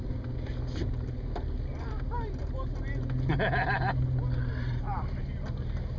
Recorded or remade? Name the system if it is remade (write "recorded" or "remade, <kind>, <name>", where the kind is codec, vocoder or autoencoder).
recorded